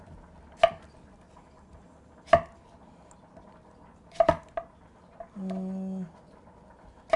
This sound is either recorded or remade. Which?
recorded